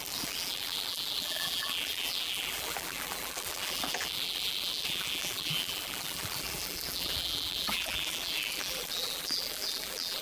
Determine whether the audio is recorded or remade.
remade